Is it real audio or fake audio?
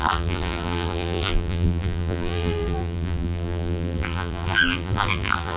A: fake